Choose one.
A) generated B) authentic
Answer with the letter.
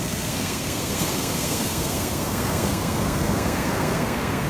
A